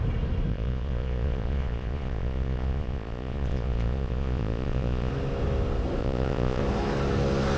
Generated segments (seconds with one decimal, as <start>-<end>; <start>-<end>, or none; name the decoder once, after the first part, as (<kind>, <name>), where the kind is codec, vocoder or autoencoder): 0.5-5.1 (vocoder, Vocos); 6.0-6.6